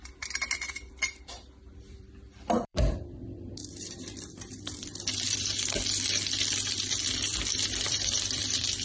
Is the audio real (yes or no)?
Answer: no